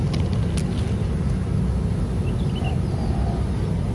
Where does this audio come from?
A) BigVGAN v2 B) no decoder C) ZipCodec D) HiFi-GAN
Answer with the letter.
B